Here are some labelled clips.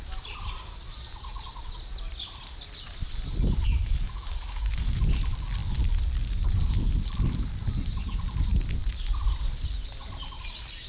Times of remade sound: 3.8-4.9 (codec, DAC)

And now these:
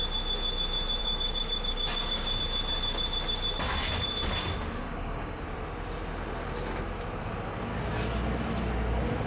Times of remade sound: 1.0-2.4 (codec, DAC); 4.8-5.4

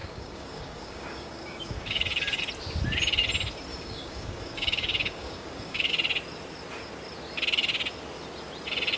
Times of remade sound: 0.0-2.4 (codec, DAC); 3.7-5.9

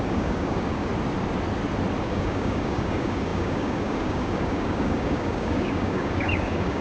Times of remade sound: 0.0-0.9 (codec, DAC); 2.0-6.8